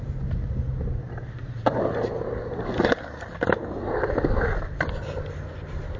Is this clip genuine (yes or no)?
yes